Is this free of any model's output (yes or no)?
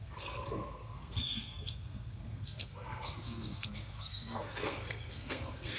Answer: no